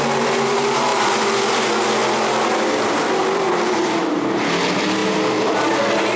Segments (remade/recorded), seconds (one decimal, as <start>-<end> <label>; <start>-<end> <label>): 0.0-0.9 recorded; 0.9-1.6 remade; 1.6-2.0 recorded; 2.0-4.2 remade; 4.2-5.0 recorded; 5.0-5.8 remade; 5.8-6.2 recorded